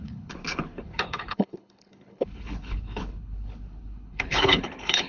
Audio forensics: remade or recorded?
remade